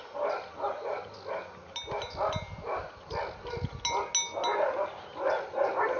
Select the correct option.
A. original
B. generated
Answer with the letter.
A